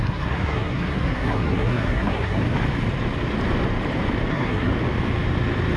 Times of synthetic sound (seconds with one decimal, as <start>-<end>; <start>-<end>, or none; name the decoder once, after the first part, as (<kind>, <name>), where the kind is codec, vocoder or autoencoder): 0.0-2.4 (codec, SNAC); 4.3-4.7